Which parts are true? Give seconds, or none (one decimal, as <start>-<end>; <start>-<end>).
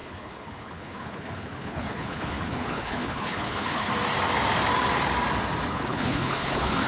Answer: 3.9-5.7